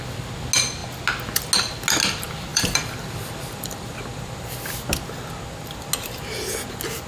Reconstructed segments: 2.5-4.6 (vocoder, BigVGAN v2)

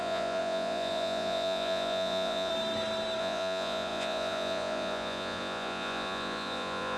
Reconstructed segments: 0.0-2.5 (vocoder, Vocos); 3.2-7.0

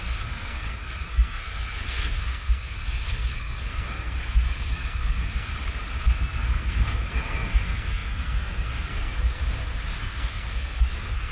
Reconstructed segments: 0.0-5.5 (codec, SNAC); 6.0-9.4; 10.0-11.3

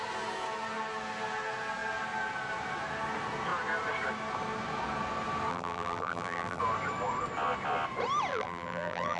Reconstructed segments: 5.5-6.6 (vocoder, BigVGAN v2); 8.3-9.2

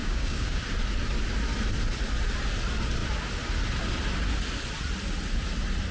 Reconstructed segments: 0.0-0.6 (codec, DAC)

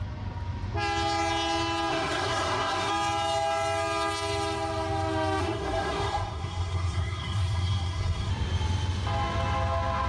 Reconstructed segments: 1.9-2.9 (codec, SNAC); 5.4-8.3

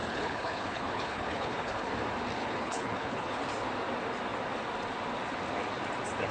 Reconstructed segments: 0.0-1.9 (codec, HILCodec); 2.4-3.4

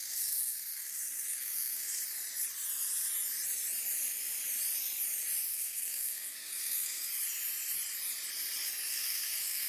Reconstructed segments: 0.0-2.0 (codec, SNAC); 5.5-7.1; 8.9-9.7